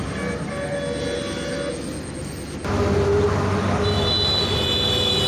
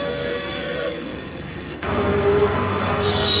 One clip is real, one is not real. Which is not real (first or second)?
second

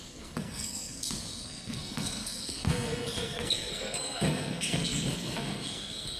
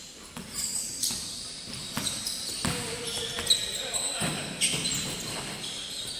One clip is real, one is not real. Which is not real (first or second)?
first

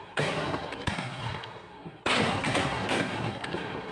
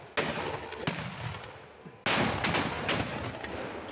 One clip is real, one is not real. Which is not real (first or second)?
first